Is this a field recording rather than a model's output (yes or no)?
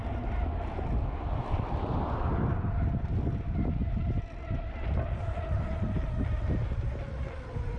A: yes